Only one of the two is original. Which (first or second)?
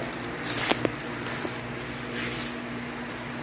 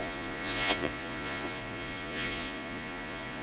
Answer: first